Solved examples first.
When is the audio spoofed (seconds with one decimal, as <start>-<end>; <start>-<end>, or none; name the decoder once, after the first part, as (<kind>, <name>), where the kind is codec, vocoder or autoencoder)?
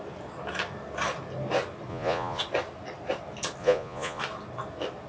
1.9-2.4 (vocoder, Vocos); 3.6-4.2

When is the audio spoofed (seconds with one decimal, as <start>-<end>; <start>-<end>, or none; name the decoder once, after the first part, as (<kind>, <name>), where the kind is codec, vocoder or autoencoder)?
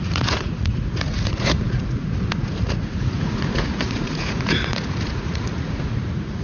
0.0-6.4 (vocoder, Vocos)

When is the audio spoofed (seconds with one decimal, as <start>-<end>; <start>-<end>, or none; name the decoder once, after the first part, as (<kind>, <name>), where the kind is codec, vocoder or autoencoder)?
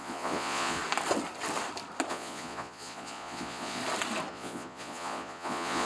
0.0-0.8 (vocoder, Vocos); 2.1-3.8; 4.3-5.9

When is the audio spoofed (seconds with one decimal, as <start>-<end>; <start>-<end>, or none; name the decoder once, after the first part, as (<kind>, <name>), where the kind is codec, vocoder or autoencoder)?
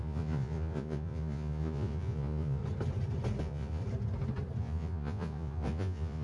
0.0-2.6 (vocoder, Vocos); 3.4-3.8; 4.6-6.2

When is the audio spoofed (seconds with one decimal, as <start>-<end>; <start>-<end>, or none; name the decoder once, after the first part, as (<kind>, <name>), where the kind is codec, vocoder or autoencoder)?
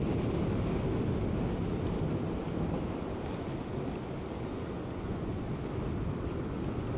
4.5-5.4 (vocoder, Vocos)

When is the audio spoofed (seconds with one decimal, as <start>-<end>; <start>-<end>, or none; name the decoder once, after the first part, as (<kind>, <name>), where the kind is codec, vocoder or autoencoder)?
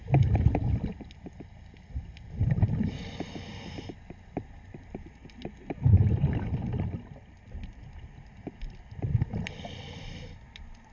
none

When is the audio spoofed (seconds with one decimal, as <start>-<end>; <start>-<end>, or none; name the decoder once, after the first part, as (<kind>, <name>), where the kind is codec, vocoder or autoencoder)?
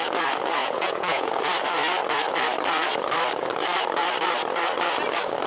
0.6-1.3 (vocoder, Vocos)